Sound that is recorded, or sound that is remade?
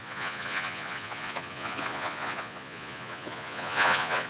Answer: remade